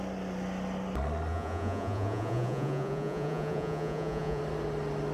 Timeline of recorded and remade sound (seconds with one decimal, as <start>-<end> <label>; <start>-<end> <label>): 0.0-1.3 recorded; 1.3-4.4 remade; 4.4-5.1 recorded